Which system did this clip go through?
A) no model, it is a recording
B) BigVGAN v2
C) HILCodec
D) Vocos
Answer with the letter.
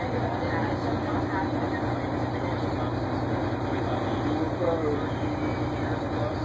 A